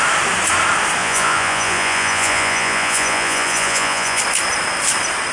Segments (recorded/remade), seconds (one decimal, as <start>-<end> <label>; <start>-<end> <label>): 0.0-1.0 recorded; 1.0-4.2 remade; 4.2-5.3 recorded